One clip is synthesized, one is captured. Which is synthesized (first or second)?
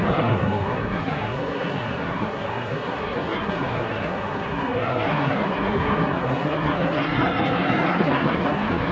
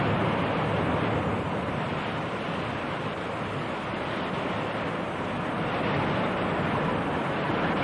first